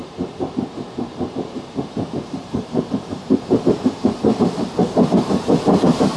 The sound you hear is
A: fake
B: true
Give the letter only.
A